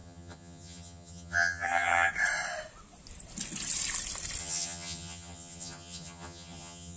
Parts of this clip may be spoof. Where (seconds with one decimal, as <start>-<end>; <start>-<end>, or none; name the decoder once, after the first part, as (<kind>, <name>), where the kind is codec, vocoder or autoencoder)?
0.0-2.1 (vocoder, HiFi-GAN); 4.4-7.0